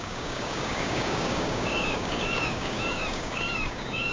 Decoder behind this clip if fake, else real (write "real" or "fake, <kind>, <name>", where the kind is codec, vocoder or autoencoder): fake, codec, DAC